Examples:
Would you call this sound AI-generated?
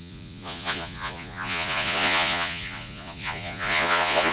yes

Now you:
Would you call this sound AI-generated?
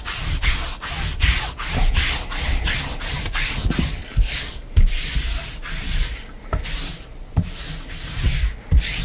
no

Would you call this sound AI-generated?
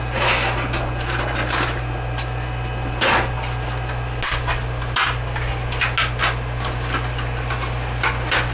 no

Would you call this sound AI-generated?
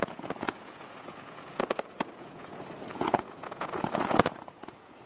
yes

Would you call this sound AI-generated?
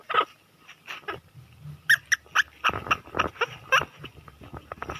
no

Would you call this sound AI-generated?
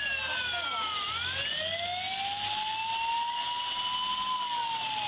no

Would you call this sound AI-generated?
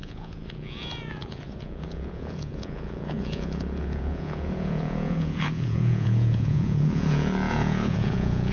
yes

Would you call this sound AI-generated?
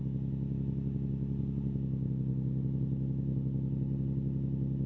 no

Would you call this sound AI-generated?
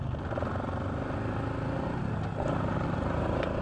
no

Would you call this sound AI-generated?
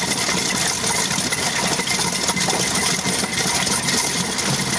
no